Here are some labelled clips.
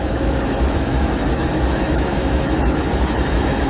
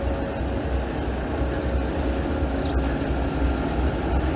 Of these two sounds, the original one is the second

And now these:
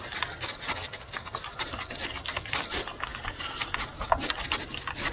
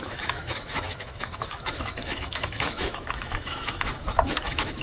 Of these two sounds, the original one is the first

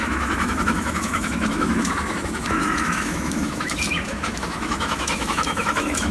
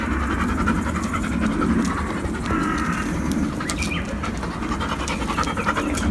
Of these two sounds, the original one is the second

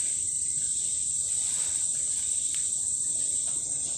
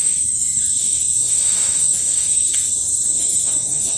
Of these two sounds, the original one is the first